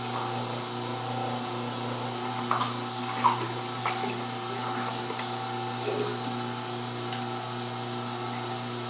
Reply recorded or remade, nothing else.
recorded